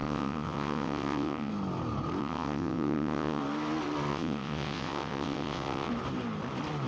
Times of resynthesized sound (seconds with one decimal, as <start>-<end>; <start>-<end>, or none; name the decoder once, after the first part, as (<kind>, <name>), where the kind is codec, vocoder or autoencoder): 0.0-1.5 (vocoder, WaveNeXt); 2.2-3.4; 4.1-5.9